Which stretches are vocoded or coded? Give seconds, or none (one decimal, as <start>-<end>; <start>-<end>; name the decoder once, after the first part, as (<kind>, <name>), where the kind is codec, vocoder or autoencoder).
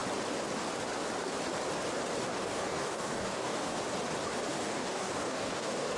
2.3-3.8 (codec, DAC); 4.5-6.0